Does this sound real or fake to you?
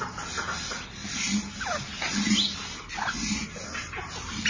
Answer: real